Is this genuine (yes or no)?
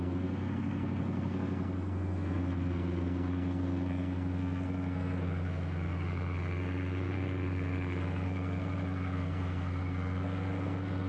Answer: no